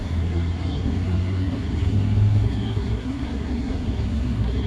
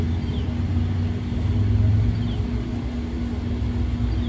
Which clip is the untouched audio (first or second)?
second